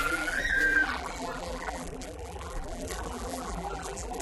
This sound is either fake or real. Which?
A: fake